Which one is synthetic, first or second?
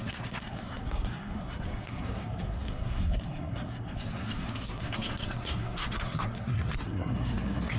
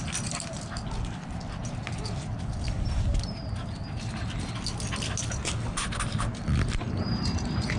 first